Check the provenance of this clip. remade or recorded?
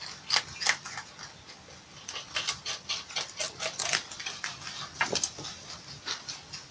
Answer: recorded